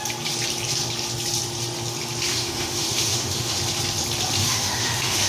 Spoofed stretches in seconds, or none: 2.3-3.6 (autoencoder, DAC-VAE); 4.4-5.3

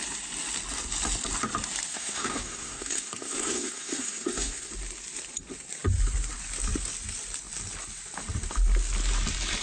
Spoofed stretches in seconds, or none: 1.9-4.7 (codec, SNAC)

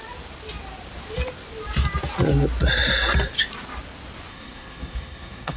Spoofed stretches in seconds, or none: 4.3-5.6 (codec, SNAC)

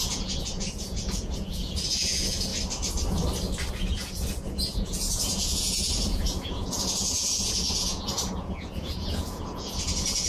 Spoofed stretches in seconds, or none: 0.0-2.5 (vocoder, Vocos); 3.7-10.3

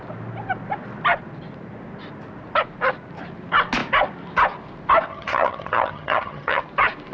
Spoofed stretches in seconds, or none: 5.1-6.6 (vocoder, HiFi-GAN)

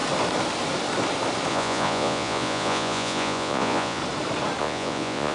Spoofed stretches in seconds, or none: 1.5-4.0 (vocoder, Vocos); 4.6-5.3